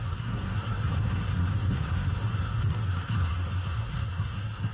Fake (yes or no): yes